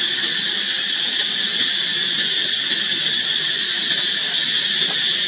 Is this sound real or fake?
real